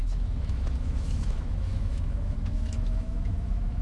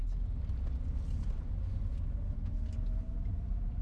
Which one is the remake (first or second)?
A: first